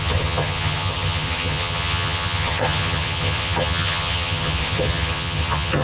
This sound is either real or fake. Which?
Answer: fake